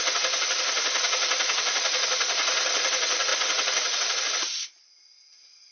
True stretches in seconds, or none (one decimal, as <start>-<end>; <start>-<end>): 0.0-5.7